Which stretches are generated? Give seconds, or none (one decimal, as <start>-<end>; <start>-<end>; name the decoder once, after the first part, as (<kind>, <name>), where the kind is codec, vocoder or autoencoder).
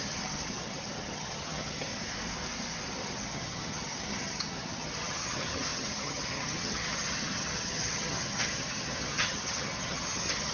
0.0-1.9 (vocoder, HiFi-GAN); 2.9-10.5